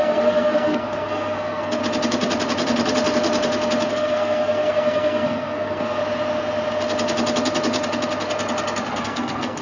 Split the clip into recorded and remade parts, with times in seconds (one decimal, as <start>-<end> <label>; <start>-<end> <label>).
0.0-1.8 remade; 1.8-3.9 recorded; 3.9-6.0 remade; 6.0-9.0 recorded; 9.0-9.6 remade